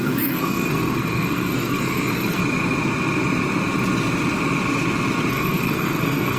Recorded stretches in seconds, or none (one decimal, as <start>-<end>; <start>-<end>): 2.4-5.3